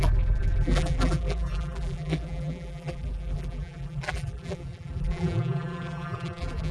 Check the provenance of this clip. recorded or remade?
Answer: remade